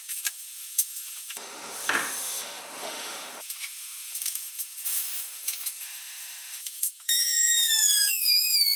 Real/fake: fake